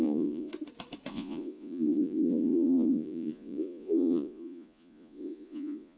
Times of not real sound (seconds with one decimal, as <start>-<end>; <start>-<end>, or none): 0.0-0.5; 1.1-6.0